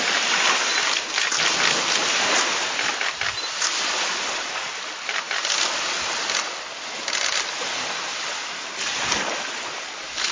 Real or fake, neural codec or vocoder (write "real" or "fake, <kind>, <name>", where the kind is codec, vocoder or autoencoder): real